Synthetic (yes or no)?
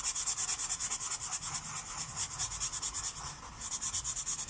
no